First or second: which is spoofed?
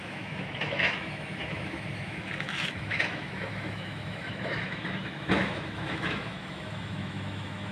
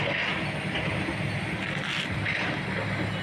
first